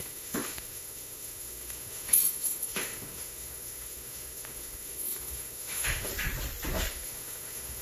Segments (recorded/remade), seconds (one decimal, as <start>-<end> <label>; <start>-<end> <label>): 0.0-6.1 remade; 6.1-6.9 recorded; 6.9-7.8 remade